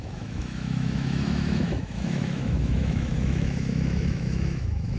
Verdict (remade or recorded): remade